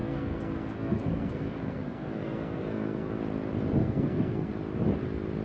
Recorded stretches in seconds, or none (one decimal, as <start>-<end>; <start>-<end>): 3.2-3.8; 4.5-5.4